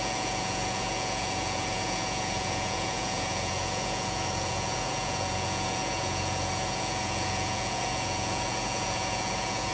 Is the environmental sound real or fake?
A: fake